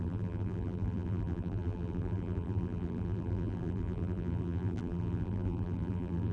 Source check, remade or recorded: remade